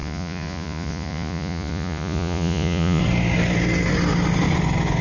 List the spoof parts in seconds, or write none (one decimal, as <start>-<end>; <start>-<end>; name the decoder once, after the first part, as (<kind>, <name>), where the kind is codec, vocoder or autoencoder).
0.0-3.0 (vocoder, Vocos)